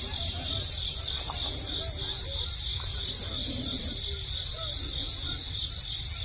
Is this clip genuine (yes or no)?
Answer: yes